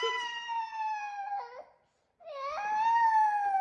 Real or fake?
real